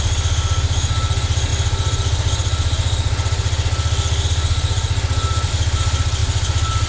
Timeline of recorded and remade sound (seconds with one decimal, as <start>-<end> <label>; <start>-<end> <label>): 0.0-6.9 recorded